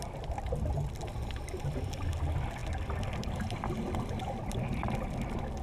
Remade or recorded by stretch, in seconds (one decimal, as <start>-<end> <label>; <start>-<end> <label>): 0.0-5.6 recorded